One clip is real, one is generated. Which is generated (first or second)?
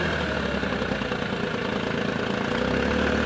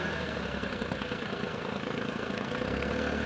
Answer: second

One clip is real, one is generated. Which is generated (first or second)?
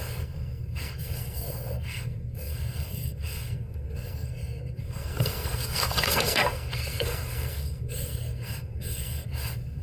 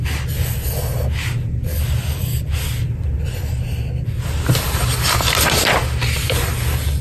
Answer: first